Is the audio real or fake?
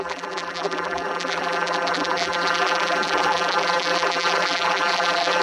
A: fake